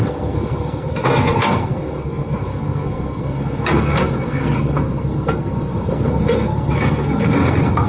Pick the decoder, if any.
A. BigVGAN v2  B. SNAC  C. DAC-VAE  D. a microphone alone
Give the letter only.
B